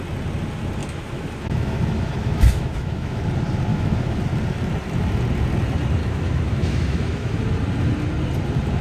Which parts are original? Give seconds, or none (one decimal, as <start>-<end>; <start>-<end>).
0.0-0.8; 3.2-3.7; 4.3-6.0; 7.4-8.8